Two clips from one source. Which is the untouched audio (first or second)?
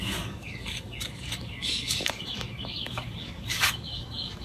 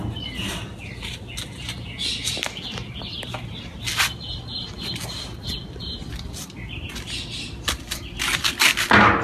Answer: second